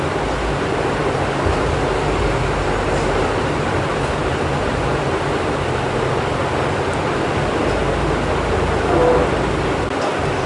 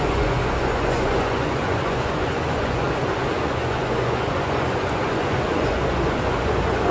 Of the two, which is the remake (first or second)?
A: second